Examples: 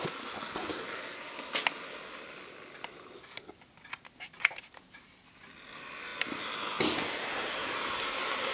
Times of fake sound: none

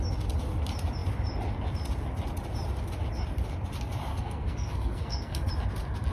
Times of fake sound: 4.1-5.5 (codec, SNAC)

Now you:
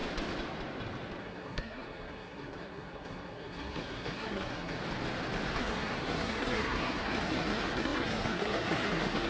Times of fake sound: 1.2-4.8 (codec, SNAC); 5.6-9.3